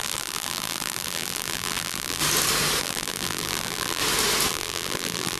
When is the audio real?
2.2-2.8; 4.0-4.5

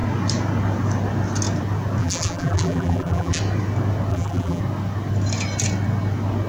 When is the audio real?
0.0-2.0; 3.4-4.1; 4.6-6.5

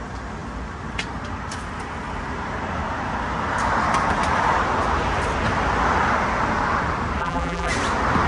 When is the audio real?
0.0-7.2; 7.7-8.3

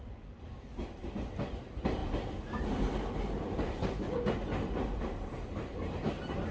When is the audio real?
0.0-6.5

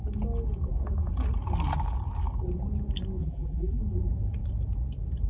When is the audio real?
0.0-3.2; 3.8-5.3

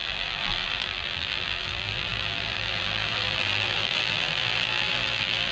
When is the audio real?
none

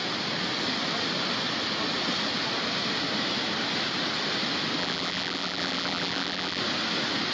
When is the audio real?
0.0-4.8; 6.6-7.3